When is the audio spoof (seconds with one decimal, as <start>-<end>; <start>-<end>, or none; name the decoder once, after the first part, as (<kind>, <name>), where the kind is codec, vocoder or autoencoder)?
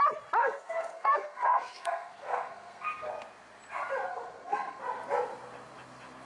0.4-3.1 (codec, SNAC); 4.1-4.8